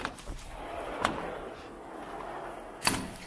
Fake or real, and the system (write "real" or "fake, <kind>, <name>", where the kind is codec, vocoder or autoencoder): real